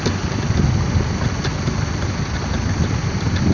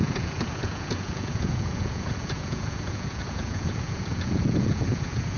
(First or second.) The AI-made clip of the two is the second